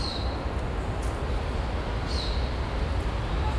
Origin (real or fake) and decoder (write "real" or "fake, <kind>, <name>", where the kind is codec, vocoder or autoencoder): real